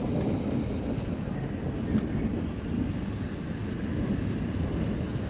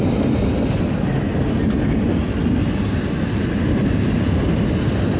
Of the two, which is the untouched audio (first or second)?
second